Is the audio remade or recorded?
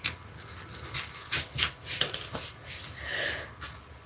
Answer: recorded